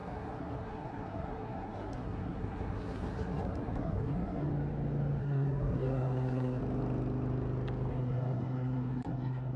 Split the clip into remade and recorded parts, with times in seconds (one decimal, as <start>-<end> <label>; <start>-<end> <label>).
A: 0.0-4.5 remade; 4.5-5.2 recorded; 5.2-6.6 remade; 6.6-7.9 recorded; 7.9-9.6 remade